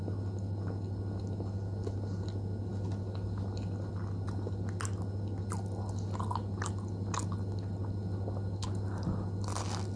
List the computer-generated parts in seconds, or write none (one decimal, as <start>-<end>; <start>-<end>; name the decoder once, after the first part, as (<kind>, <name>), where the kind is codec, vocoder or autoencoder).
none